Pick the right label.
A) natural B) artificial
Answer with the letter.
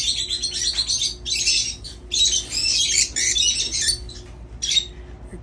A